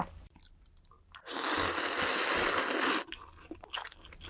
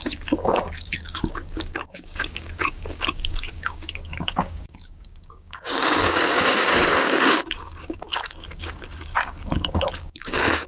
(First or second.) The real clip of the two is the first